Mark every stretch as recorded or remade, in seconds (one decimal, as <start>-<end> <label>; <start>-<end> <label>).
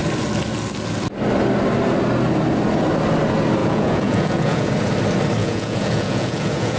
0.0-3.6 recorded; 3.6-4.7 remade; 4.7-5.4 recorded; 5.4-6.8 remade